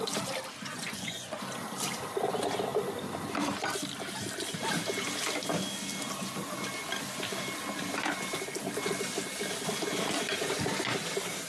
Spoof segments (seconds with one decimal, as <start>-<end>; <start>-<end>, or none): 0.7-1.4